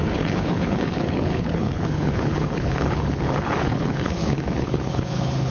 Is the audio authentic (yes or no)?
no